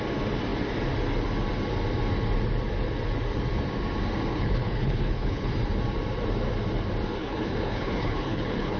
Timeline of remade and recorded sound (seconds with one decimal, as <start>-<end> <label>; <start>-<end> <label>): 0.0-4.3 recorded; 4.3-5.5 remade; 5.5-7.2 recorded; 7.2-8.8 remade